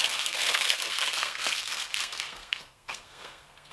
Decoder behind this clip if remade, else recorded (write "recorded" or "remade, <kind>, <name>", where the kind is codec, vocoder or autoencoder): remade, codec, SNAC